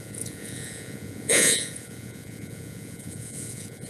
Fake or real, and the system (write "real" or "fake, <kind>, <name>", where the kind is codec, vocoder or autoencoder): fake, vocoder, Vocos